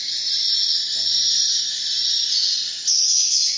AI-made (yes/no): no